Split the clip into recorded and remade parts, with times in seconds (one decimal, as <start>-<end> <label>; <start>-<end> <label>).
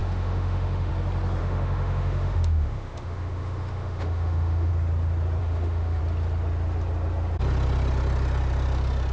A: 0.0-0.9 remade; 0.9-1.4 recorded; 1.4-4.7 remade; 4.7-5.4 recorded; 5.4-6.0 remade; 6.0-9.1 recorded